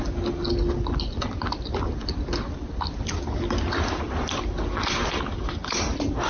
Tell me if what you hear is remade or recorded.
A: recorded